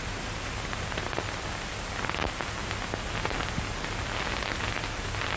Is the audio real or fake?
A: real